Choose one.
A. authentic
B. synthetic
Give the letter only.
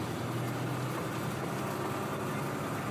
A